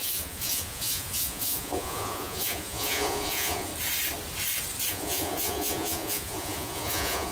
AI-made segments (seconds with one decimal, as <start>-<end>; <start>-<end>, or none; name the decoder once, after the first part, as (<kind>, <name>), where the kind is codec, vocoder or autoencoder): 0.0-3.7 (vocoder, Vocos); 4.9-7.3